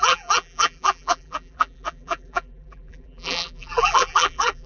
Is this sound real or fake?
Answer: fake